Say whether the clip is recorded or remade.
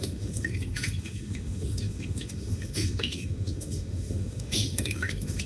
remade